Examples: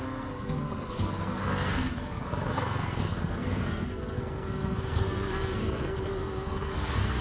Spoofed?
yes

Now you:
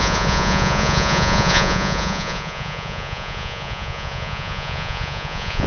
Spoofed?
yes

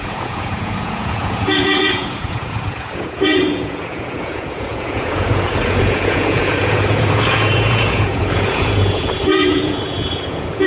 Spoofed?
yes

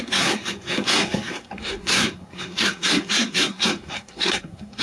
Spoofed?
yes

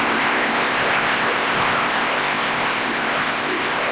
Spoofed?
yes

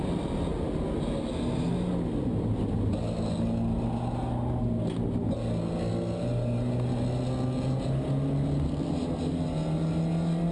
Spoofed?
no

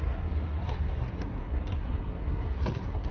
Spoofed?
yes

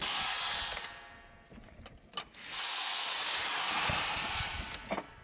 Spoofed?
no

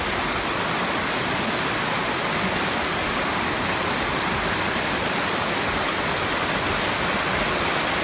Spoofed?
no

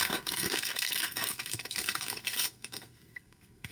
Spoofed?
yes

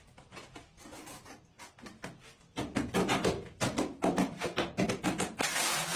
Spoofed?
no